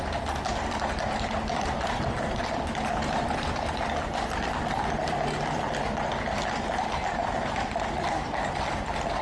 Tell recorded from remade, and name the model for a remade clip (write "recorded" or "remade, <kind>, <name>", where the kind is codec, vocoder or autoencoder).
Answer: remade, vocoder, BigVGAN v2